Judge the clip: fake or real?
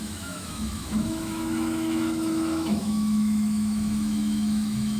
fake